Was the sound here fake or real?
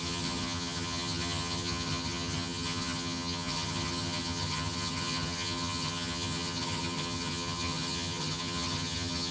fake